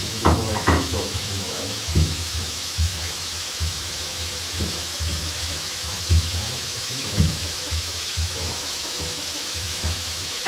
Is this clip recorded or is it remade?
remade